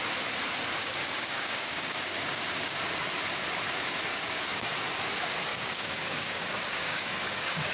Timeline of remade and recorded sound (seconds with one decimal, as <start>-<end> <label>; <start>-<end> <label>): 0.0-0.8 recorded; 0.8-2.8 remade; 2.8-4.1 recorded; 4.1-4.7 remade; 4.7-5.5 recorded; 5.5-7.7 remade